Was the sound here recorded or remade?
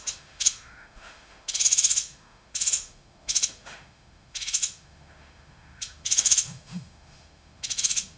remade